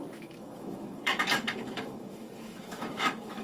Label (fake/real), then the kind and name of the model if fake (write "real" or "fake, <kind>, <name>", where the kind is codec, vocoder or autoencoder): fake, autoencoder, DAC-VAE